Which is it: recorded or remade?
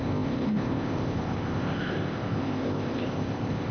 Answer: remade